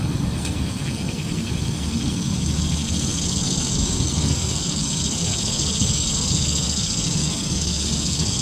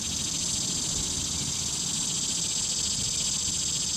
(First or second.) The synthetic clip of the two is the first